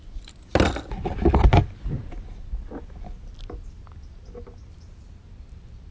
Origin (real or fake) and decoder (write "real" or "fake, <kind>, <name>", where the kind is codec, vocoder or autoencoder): real